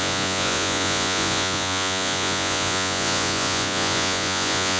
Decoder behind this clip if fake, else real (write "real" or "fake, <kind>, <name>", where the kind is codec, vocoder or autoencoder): fake, vocoder, Vocos